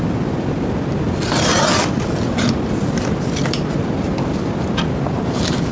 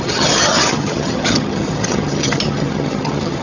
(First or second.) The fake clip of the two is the second